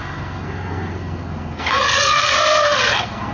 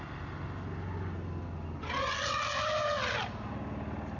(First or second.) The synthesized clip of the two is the first